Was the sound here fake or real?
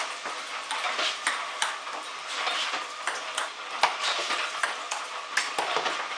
real